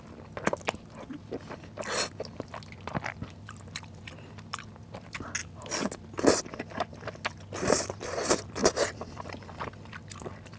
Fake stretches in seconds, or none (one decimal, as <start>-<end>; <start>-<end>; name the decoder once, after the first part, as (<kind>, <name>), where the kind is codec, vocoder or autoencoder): none